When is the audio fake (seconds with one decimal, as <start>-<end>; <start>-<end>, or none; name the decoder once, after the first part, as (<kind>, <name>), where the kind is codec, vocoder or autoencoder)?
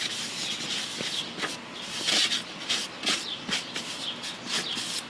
none